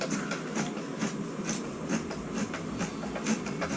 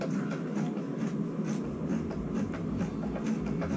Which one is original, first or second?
second